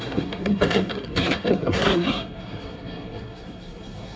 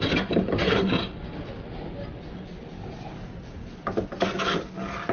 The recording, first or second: second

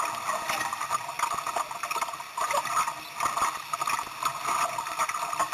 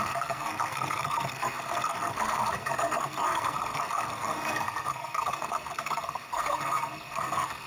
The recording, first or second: first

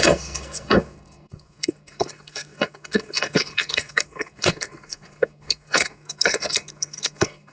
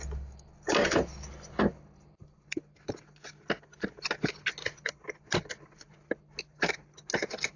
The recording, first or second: second